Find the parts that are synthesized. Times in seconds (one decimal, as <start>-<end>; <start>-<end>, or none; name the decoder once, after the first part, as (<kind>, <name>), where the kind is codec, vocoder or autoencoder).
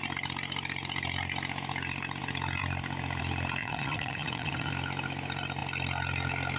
3.6-4.7 (vocoder, WaveNeXt)